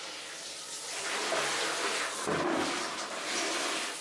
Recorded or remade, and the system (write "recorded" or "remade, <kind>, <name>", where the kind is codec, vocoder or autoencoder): recorded